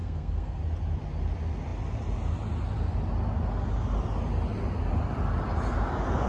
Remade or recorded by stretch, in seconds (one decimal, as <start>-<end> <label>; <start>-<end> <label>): 0.0-0.6 remade; 0.6-6.3 recorded